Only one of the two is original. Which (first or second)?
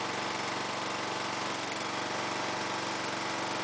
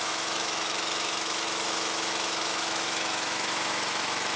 first